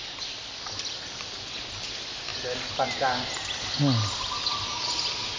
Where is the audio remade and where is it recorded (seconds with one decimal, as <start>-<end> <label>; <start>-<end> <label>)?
0.0-5.4 recorded